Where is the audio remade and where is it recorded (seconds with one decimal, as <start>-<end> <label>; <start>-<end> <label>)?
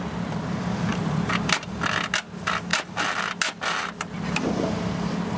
0.0-0.9 recorded; 0.9-1.7 remade; 1.7-5.4 recorded